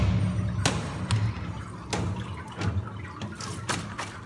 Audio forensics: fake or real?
real